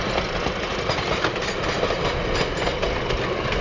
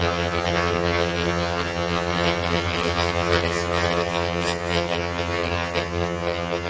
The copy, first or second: second